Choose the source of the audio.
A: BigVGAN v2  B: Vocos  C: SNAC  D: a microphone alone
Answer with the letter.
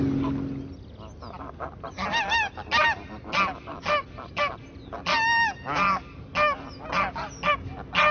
D